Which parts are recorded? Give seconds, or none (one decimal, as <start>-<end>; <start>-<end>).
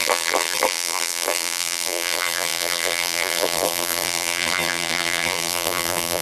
none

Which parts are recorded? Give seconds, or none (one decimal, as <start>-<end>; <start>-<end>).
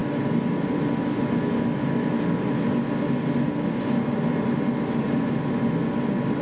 0.0-6.4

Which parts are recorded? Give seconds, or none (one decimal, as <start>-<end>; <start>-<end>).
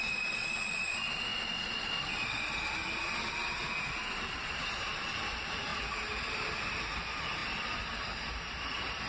1.3-3.8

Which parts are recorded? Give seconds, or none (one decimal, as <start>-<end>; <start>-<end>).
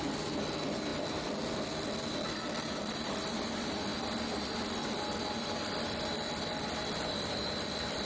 0.0-8.1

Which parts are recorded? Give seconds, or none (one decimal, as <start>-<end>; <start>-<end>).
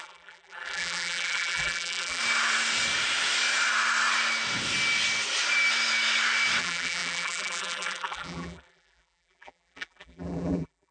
2.2-6.6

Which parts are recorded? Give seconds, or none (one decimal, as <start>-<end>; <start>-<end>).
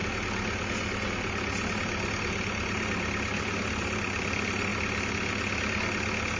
0.0-6.4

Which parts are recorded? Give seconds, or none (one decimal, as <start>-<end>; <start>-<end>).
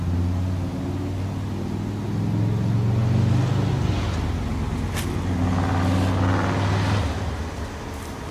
0.0-8.3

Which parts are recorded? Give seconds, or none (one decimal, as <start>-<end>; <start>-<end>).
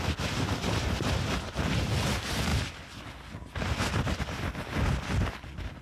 0.0-5.8